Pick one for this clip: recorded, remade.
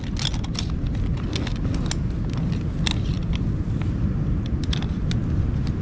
recorded